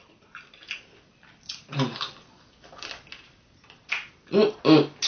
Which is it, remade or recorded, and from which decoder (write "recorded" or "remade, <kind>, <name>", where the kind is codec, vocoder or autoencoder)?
recorded